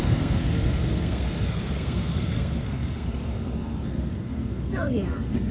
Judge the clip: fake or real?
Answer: fake